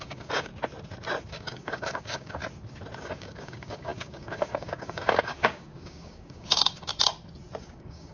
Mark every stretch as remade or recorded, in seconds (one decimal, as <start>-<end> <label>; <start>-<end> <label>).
0.0-0.5 remade; 0.5-1.3 recorded; 1.3-2.4 remade; 2.4-3.0 recorded; 3.0-6.9 remade; 6.9-7.6 recorded; 7.6-8.1 remade